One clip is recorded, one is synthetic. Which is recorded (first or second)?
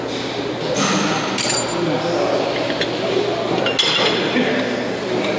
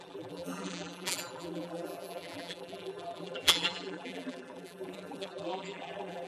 first